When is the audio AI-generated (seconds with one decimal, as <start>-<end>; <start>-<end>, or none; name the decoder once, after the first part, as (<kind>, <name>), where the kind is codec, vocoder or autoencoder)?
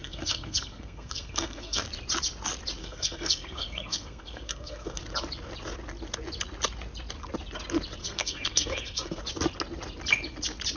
0.0-1.8 (codec, SNAC); 2.8-5.0; 8.0-9.2